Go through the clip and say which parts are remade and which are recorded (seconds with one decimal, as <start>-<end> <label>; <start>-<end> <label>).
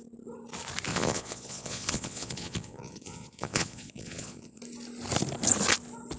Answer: 0.0-0.9 recorded; 0.9-4.6 remade; 4.6-6.2 recorded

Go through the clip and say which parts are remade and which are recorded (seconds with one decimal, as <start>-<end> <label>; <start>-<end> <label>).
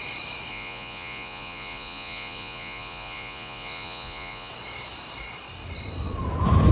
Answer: 0.0-0.5 recorded; 0.5-4.5 remade; 4.5-6.7 recorded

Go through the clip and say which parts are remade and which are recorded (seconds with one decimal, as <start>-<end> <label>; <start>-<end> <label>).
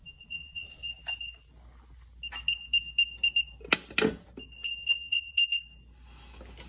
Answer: 0.0-0.8 remade; 0.8-4.8 recorded; 4.8-5.4 remade; 5.4-6.7 recorded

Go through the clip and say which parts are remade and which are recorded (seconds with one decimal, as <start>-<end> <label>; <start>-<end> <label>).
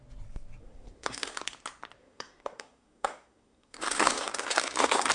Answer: 0.0-0.6 recorded; 0.6-1.4 remade; 1.4-2.0 recorded; 2.0-5.1 remade